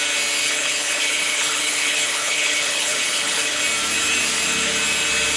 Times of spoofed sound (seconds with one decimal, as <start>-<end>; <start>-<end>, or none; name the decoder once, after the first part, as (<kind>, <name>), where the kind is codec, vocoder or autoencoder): 0.4-3.6 (codec, HILCodec)